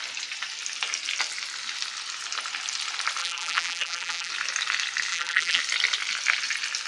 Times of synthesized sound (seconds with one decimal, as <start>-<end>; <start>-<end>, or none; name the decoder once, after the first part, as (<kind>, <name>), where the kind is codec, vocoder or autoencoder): 3.2-4.3 (vocoder, BigVGAN v2); 5.1-5.6